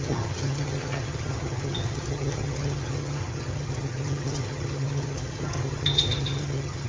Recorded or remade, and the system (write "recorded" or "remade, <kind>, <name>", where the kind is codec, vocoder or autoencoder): remade, vocoder, HiFi-GAN